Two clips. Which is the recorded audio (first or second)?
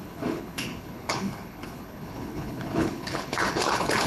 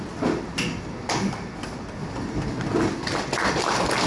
second